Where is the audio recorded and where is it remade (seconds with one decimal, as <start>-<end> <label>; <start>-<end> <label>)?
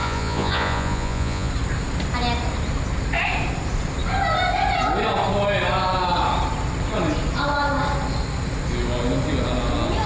0.0-1.5 remade; 1.5-10.1 recorded